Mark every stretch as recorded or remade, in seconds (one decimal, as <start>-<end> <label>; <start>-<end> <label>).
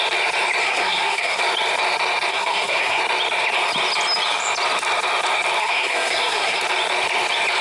0.0-0.6 recorded; 0.6-1.4 remade; 1.4-2.3 recorded; 2.3-3.0 remade; 3.0-5.6 recorded; 5.6-6.6 remade; 6.6-7.6 recorded